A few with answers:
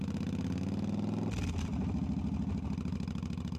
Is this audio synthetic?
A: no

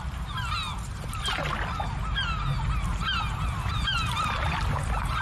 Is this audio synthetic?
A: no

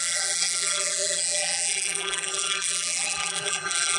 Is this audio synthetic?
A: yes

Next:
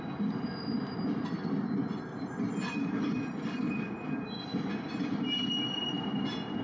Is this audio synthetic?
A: no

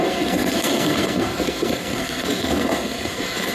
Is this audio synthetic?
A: yes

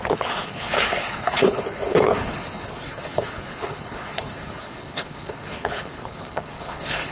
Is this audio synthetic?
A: yes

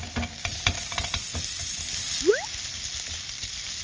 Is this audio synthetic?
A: no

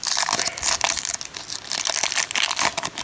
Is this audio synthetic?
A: no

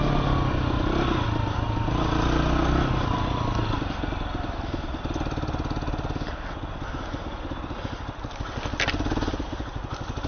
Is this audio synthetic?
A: no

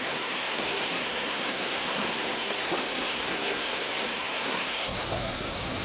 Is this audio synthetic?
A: yes